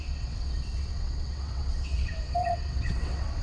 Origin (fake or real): fake